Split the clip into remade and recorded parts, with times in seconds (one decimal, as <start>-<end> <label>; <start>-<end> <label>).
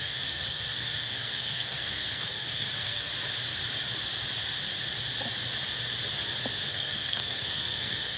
0.0-3.1 remade; 3.1-6.7 recorded; 6.7-8.2 remade